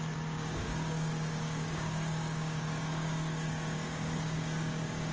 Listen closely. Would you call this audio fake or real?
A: fake